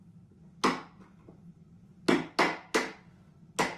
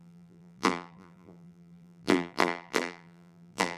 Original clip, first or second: first